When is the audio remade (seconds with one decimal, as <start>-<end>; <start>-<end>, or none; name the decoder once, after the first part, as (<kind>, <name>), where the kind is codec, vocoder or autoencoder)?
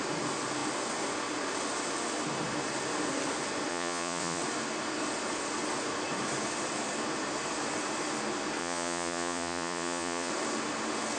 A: 3.7-4.4 (vocoder, Vocos); 8.6-10.3